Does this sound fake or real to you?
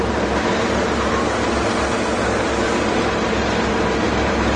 real